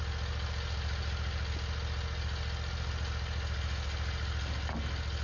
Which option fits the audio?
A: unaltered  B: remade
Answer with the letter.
A